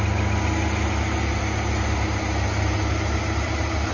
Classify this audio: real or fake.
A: real